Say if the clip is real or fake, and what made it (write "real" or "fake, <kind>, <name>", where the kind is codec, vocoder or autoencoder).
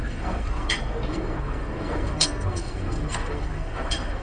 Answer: fake, codec, SNAC